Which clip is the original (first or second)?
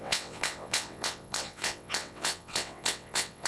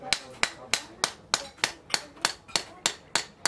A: second